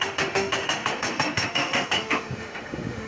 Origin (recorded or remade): remade